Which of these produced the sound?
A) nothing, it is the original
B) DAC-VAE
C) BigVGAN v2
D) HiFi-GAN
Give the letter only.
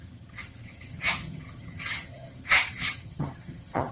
D